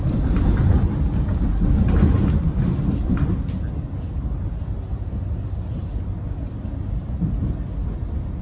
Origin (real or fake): real